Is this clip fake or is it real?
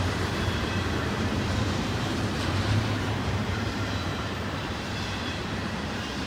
fake